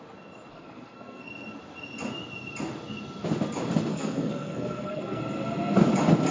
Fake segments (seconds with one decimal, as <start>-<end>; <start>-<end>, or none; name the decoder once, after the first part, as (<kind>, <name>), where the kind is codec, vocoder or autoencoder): 0.5-1.3 (codec, SNAC); 3.9-5.2

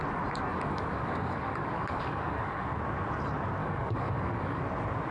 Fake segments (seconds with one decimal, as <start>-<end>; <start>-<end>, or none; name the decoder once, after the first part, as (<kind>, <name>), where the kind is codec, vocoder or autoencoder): 0.5-2.8 (codec, DAC); 3.6-4.6

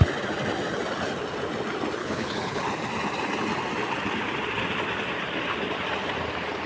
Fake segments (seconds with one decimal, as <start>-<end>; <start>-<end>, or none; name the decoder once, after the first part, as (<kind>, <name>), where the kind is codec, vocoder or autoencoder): 2.0-2.6 (codec, HILCodec)

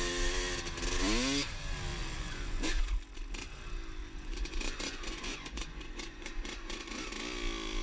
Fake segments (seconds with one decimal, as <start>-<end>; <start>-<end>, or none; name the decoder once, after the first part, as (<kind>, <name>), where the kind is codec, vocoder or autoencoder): 1.9-2.8 (vocoder, Vocos); 4.0-7.0

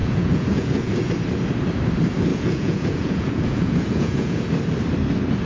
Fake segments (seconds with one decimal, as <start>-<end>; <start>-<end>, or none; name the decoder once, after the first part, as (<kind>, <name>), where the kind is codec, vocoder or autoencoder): 0.0-1.1 (vocoder, Vocos); 2.3-4.4

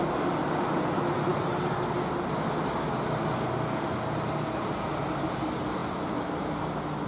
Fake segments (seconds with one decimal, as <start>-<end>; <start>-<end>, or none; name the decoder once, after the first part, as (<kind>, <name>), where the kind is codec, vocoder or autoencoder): none